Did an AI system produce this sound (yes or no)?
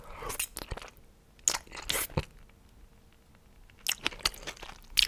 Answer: no